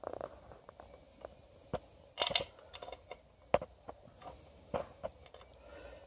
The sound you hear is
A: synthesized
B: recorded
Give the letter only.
B